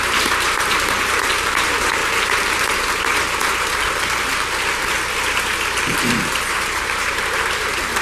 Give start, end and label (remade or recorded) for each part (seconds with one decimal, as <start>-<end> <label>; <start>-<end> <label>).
0.0-2.0 remade; 2.0-6.5 recorded; 6.5-8.0 remade